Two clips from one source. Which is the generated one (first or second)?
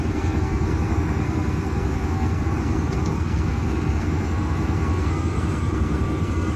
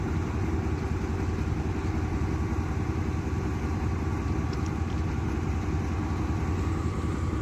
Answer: first